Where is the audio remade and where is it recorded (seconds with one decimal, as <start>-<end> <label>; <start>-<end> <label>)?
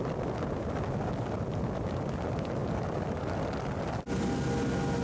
0.0-5.0 recorded